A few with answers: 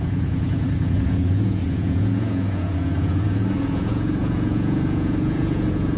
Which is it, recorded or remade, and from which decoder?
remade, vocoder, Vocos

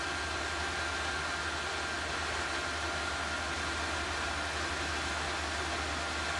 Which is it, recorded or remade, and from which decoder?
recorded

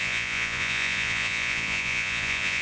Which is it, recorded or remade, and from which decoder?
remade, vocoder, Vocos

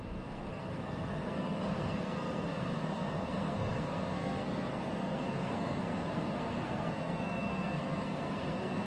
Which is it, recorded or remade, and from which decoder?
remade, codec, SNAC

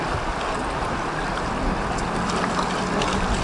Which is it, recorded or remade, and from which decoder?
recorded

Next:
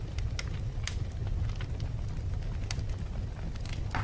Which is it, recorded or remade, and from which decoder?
recorded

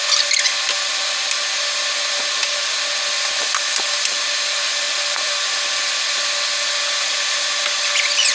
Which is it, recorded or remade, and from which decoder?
recorded